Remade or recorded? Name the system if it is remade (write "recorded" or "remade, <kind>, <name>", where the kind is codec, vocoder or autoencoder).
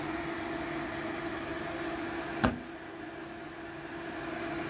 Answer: recorded